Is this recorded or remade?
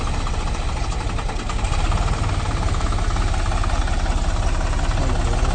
recorded